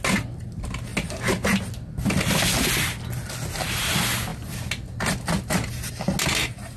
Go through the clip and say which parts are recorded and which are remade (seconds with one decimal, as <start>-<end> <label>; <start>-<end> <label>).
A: 0.0-6.8 recorded